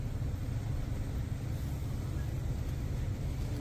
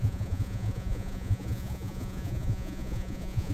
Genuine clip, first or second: first